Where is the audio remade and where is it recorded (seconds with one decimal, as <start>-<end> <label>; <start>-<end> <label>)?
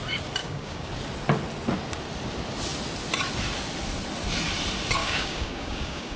0.0-0.4 recorded; 0.4-0.9 remade; 0.9-5.0 recorded; 5.0-6.2 remade